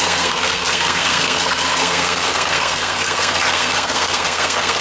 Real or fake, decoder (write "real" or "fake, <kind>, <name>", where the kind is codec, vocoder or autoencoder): fake, codec, SNAC